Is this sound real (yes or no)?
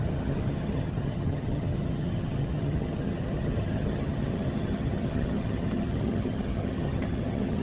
no